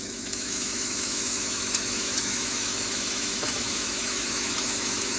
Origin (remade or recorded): remade